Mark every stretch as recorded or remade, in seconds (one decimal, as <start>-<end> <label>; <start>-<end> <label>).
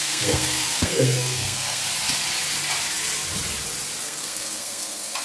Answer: 0.0-1.8 remade; 1.8-4.0 recorded; 4.0-5.2 remade